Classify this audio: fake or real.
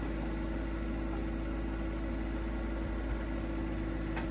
real